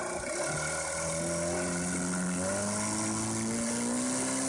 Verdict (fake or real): real